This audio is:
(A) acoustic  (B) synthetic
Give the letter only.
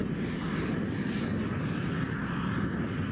A